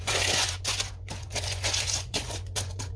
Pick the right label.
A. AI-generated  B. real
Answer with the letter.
A